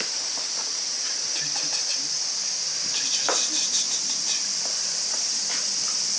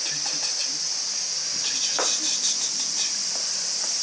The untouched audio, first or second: second